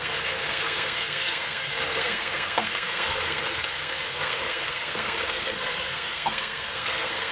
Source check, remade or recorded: remade